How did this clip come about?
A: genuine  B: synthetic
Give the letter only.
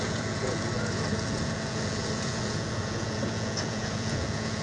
B